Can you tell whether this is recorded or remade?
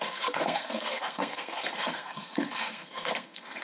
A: remade